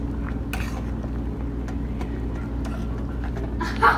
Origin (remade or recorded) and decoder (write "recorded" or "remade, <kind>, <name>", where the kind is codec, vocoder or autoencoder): recorded